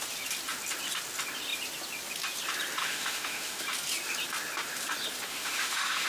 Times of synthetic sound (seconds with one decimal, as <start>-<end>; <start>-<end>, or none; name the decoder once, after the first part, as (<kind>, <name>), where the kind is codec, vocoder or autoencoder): 2.8-3.6 (autoencoder, DAC-VAE); 5.3-6.1